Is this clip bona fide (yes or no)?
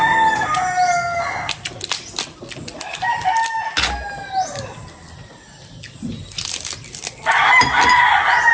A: yes